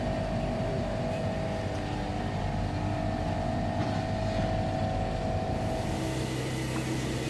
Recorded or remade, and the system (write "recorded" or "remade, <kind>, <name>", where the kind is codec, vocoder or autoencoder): recorded